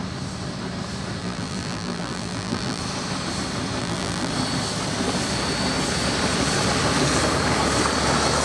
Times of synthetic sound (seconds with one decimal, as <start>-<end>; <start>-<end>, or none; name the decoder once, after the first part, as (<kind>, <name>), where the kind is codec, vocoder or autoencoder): 1.2-2.8 (vocoder, BigVGAN v2); 3.8-4.3